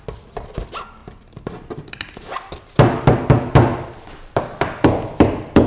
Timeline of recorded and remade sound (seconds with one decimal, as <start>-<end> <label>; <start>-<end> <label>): 0.0-5.7 recorded